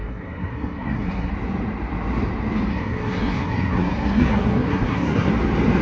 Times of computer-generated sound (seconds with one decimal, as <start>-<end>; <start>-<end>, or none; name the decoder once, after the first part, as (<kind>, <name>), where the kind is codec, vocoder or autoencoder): 0.0-1.3 (codec, SNAC); 2.7-5.3